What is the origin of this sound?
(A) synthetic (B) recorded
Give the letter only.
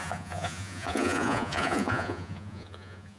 A